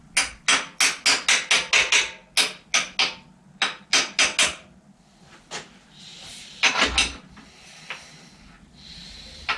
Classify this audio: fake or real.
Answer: real